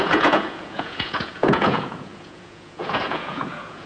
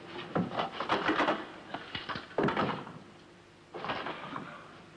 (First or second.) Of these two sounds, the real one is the second